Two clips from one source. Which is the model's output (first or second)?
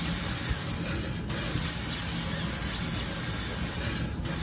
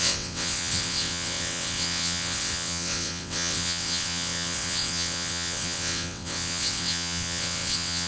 second